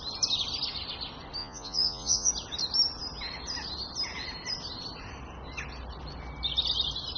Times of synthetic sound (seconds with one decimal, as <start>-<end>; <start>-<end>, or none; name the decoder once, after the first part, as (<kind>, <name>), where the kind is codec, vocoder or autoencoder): 1.4-2.3 (vocoder, Vocos)